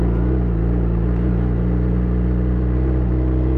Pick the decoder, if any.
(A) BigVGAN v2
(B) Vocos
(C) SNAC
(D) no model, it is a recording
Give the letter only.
D